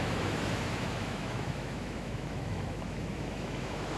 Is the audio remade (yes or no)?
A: yes